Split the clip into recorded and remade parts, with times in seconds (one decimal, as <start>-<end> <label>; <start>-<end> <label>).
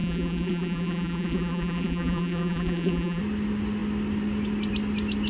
0.0-3.2 remade; 3.2-5.3 recorded